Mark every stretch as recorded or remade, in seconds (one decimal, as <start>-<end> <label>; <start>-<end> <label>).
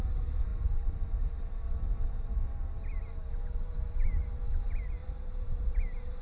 0.0-6.2 recorded